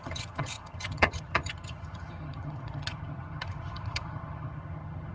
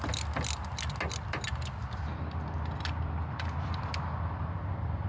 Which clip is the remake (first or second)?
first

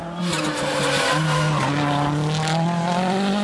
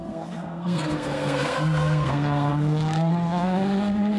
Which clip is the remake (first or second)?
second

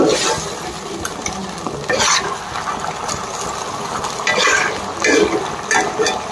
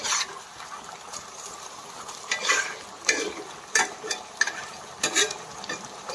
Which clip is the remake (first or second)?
second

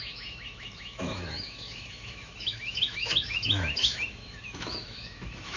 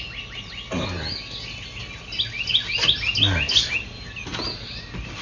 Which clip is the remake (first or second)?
first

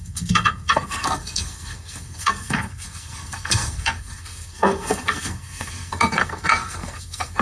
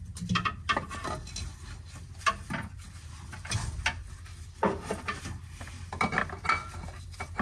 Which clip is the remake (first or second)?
first